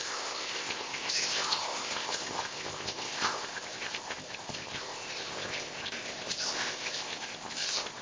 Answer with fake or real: fake